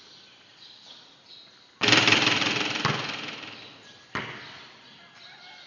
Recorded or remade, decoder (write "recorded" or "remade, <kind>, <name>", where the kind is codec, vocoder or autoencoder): recorded